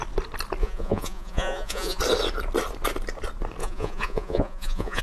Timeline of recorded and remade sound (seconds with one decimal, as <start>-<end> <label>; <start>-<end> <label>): 0.0-0.6 recorded; 0.6-2.0 remade; 2.0-3.6 recorded; 3.6-5.0 remade